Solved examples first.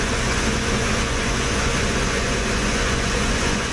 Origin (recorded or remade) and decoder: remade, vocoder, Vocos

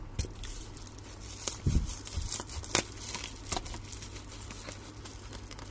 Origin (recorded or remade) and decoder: recorded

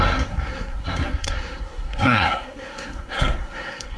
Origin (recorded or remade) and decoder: remade, codec, SNAC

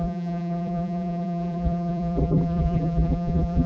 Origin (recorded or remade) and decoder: remade, vocoder, BigVGAN v2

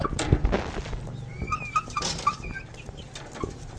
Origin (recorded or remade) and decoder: recorded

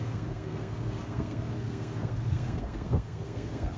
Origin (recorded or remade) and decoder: remade, codec, SNAC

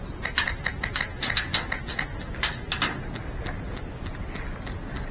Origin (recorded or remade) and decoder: recorded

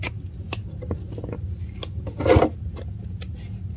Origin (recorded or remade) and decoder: recorded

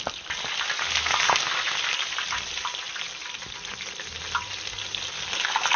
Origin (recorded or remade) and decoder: recorded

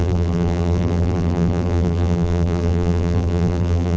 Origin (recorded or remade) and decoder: remade, vocoder, BigVGAN v2